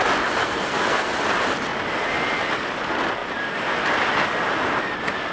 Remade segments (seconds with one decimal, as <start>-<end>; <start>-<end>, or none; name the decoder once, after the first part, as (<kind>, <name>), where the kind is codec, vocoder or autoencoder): 0.4-1.1 (codec, SNAC)